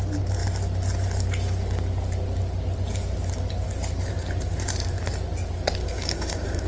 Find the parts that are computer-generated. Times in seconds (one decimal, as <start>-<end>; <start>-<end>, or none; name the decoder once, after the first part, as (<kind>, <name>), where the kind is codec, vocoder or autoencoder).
5.8-6.7 (codec, DAC)